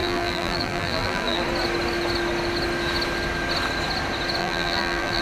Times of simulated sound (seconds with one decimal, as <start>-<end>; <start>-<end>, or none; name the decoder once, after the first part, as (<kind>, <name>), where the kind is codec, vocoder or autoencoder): 0.0-1.4 (vocoder, BigVGAN v2); 4.4-5.2